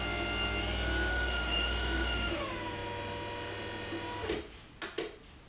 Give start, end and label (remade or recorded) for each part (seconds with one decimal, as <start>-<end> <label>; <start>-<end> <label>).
0.0-1.1 recorded; 1.1-2.4 remade; 2.4-5.5 recorded